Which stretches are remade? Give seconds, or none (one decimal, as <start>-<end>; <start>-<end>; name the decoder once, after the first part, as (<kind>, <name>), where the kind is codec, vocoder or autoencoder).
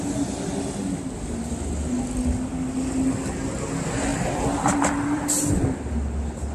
4.1-5.4 (vocoder, BigVGAN v2)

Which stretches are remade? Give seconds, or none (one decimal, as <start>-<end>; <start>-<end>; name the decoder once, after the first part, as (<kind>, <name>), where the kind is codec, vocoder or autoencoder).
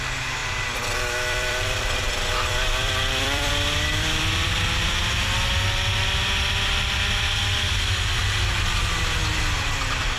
0.4-3.5 (vocoder, BigVGAN v2); 3.9-5.0